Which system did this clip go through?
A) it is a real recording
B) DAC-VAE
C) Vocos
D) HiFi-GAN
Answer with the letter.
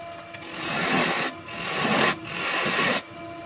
A